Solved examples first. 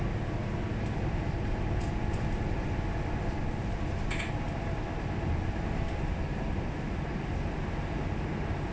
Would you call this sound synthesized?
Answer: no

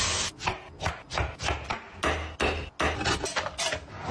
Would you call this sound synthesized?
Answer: no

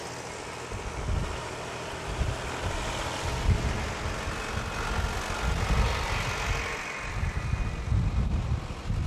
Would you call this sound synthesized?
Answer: no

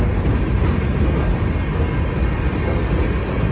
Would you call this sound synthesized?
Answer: no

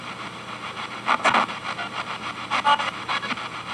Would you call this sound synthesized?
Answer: no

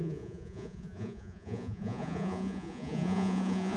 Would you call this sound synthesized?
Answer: yes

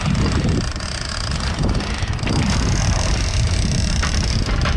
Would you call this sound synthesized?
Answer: no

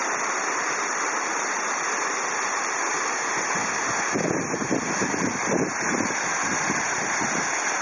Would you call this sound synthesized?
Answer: no